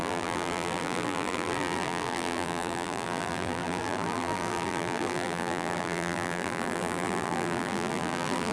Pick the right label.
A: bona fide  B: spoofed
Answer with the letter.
B